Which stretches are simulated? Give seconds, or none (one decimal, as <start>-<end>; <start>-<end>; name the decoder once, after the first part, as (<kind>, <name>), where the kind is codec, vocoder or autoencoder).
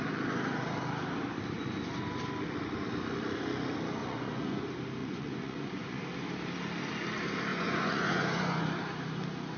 4.0-4.6 (vocoder, Vocos); 5.0-6.0; 7.5-8.6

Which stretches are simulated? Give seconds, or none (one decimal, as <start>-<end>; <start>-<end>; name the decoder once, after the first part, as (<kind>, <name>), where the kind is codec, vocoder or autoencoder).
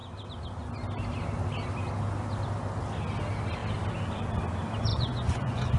4.9-5.8 (vocoder, Vocos)